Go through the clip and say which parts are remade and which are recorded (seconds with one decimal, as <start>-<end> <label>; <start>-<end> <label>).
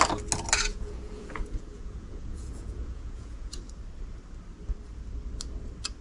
0.0-0.7 recorded; 0.7-3.6 remade; 3.6-6.0 recorded